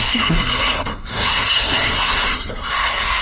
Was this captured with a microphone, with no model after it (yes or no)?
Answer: no